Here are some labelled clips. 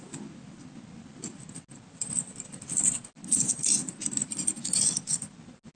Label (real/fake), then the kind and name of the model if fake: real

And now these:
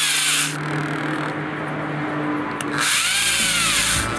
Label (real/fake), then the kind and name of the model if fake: real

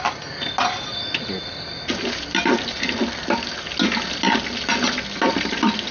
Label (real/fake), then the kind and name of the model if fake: real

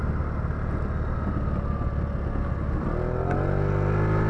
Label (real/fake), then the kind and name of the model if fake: real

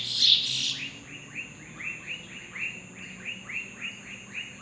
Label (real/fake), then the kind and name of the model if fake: real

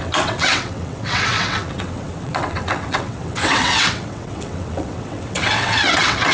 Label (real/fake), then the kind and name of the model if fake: fake, vocoder, WaveNeXt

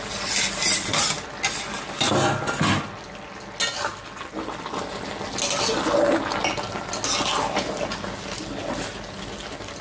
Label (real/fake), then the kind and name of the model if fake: real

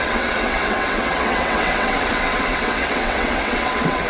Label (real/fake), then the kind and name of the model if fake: fake, vocoder, WaveNeXt